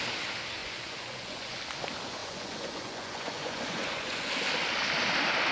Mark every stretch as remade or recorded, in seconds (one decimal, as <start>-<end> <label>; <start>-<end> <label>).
0.0-0.6 recorded; 0.6-1.6 remade; 1.6-2.2 recorded; 2.2-4.3 remade; 4.3-5.5 recorded